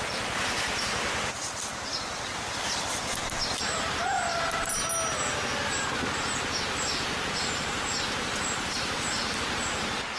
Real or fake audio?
real